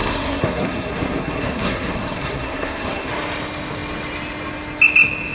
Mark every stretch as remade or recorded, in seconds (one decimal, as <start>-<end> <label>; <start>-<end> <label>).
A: 0.0-3.1 remade; 3.1-5.3 recorded